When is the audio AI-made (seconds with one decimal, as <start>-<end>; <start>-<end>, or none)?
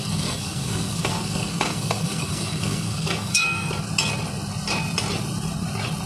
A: 0.0-3.7